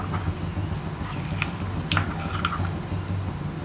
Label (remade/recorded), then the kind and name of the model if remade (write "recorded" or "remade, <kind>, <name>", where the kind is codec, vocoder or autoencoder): recorded